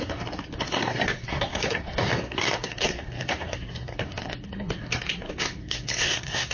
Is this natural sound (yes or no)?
no